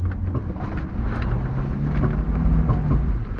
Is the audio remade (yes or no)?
no